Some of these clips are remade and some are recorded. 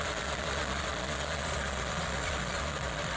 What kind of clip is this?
remade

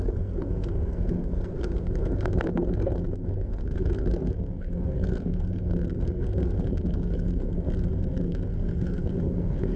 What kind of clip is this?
remade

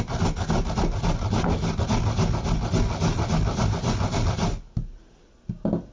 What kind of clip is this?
recorded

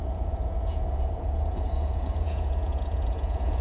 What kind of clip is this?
remade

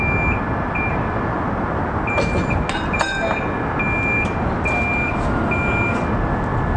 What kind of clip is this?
recorded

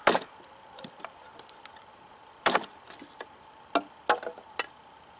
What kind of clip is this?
recorded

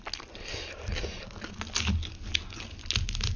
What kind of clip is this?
recorded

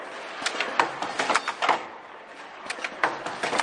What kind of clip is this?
recorded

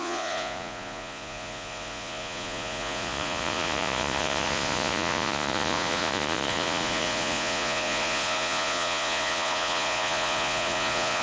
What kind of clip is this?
remade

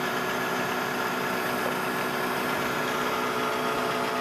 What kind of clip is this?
recorded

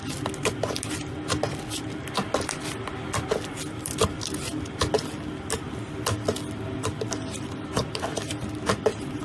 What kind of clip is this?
recorded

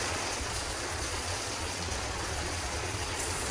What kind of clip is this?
remade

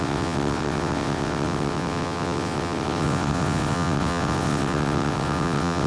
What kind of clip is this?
remade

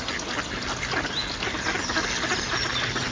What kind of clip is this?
recorded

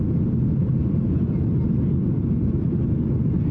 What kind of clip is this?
recorded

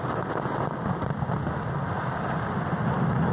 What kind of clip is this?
recorded